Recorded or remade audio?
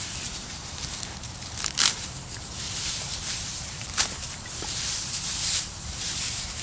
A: remade